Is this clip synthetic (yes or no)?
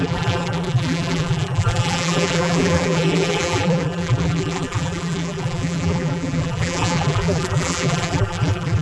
yes